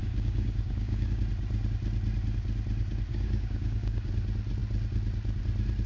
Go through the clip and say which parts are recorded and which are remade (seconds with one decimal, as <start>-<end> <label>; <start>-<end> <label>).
0.0-1.2 remade; 1.2-3.1 recorded; 3.1-4.1 remade; 4.1-5.9 recorded